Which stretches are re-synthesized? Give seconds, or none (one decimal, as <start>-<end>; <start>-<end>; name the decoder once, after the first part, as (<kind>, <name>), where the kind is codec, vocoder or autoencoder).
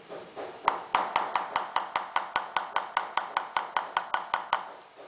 none